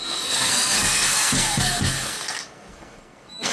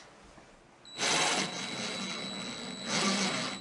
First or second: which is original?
second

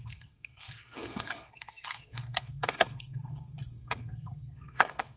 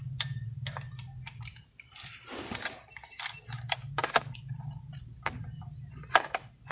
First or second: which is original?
second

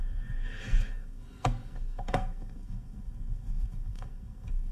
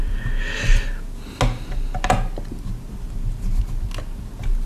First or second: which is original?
second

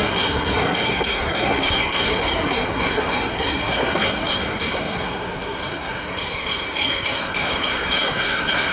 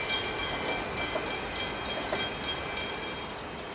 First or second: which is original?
second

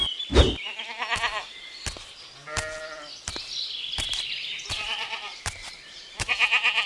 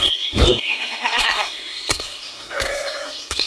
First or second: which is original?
first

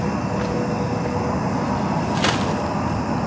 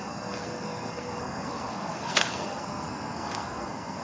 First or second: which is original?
first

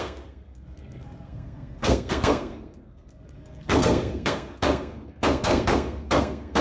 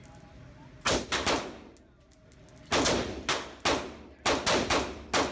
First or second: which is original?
second